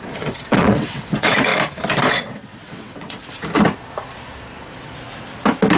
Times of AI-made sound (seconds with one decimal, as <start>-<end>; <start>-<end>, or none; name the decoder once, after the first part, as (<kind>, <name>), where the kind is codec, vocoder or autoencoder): 0.0-1.5 (vocoder, WaveNeXt); 2.1-3.2